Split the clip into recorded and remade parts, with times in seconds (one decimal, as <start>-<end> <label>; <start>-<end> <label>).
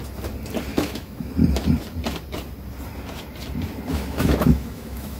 0.0-0.7 recorded; 0.7-1.3 remade; 1.3-3.9 recorded; 3.9-5.2 remade